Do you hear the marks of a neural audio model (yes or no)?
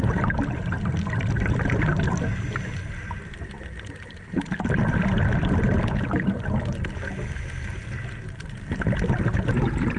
no